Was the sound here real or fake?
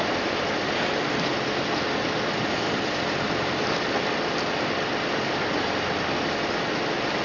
real